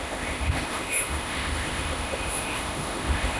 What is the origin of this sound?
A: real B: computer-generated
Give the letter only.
B